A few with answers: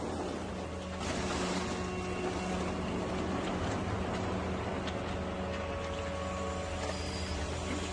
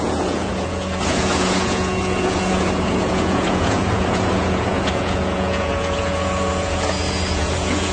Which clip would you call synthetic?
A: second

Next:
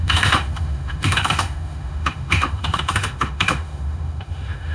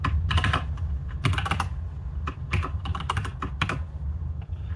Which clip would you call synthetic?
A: first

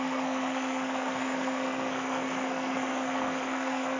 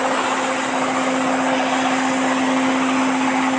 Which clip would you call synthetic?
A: first